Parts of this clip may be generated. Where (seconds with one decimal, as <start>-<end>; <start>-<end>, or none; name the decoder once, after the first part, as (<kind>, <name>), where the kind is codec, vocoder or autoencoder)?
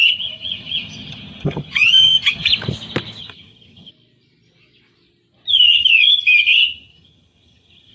0.0-2.5 (vocoder, HiFi-GAN); 3.2-3.9; 5.5-7.9